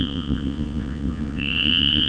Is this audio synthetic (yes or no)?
yes